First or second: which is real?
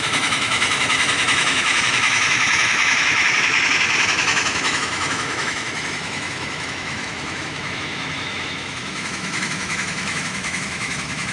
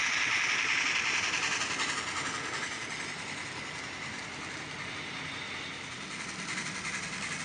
second